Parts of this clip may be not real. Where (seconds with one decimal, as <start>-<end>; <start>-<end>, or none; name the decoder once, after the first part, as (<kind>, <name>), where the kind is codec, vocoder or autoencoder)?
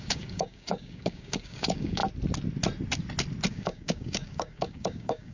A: 0.0-2.0 (codec, DAC); 3.5-5.3